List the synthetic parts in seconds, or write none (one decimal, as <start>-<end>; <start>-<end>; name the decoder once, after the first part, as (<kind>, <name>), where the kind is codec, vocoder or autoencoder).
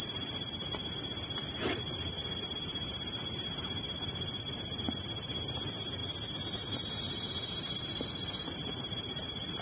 0.0-6.0 (vocoder, BigVGAN v2); 7.5-9.6